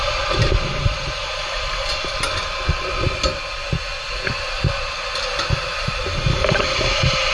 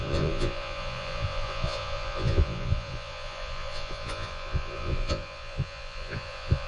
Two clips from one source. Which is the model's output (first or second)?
second